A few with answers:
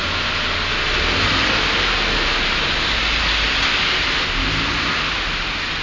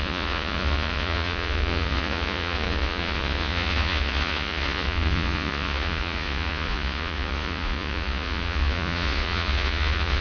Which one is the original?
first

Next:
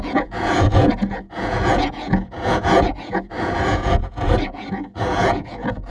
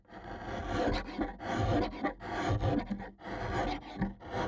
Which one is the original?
second